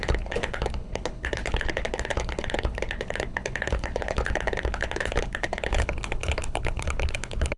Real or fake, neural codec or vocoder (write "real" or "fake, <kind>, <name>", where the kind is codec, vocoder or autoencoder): fake, codec, HILCodec